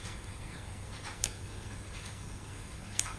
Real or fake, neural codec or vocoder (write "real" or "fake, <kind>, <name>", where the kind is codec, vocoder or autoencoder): fake, codec, SNAC